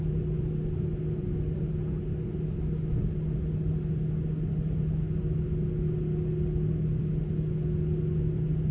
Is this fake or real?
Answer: real